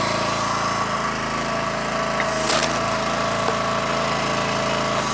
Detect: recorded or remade recorded